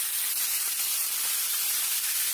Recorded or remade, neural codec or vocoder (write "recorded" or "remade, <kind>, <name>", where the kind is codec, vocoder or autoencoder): recorded